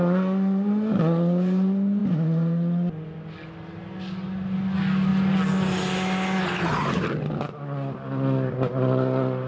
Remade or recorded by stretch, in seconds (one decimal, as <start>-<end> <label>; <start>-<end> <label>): 0.0-9.5 recorded